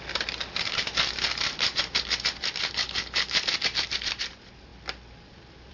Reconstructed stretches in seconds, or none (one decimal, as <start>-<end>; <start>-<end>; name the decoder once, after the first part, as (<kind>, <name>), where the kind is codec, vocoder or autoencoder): none